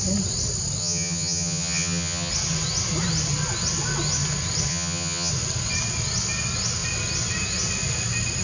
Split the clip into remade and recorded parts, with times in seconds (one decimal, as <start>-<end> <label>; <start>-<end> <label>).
0.0-0.8 recorded; 0.8-2.3 remade; 2.3-4.7 recorded; 4.7-5.3 remade; 5.3-8.4 recorded